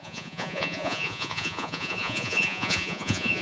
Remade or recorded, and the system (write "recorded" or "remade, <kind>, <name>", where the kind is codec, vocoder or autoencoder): remade, vocoder, Vocos